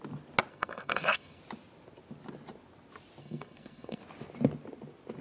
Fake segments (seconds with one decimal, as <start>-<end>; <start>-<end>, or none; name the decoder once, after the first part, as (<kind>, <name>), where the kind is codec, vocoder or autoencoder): 0.5-1.4 (codec, SNAC); 3.2-4.0